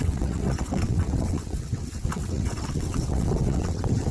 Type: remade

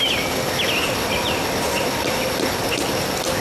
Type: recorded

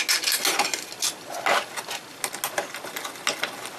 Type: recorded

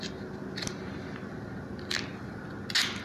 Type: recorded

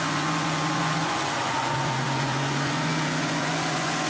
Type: remade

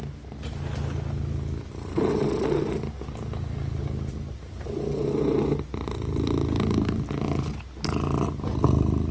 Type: recorded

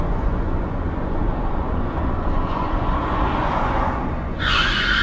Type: remade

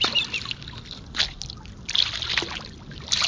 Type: recorded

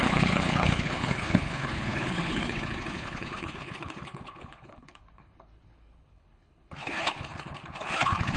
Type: remade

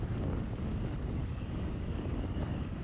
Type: remade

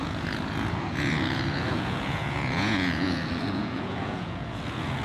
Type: remade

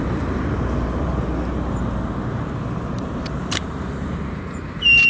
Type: remade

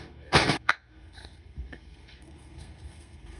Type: remade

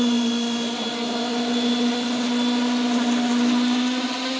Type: recorded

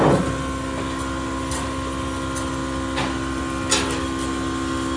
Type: recorded